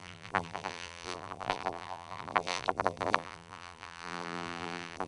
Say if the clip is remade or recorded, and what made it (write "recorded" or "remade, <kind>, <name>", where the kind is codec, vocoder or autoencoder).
remade, vocoder, BigVGAN v2